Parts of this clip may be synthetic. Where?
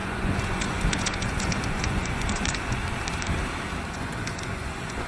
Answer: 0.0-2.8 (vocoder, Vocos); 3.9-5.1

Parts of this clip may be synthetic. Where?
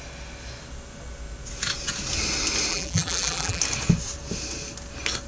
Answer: 2.7-3.6 (vocoder, BigVGAN v2)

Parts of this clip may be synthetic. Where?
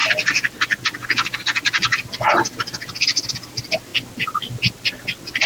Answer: none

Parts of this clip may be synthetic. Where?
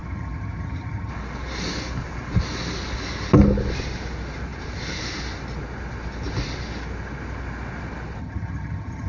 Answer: 0.0-1.1 (vocoder, HiFi-GAN); 8.2-9.1